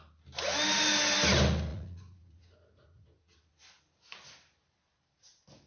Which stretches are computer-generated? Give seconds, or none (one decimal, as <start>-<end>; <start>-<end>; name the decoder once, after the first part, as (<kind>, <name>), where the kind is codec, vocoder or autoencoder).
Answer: 1.7-3.2 (vocoder, Vocos)